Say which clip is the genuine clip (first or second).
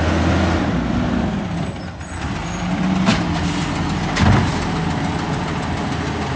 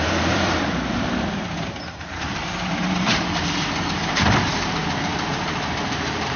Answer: first